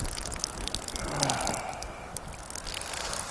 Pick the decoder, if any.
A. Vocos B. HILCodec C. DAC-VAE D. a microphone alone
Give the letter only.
D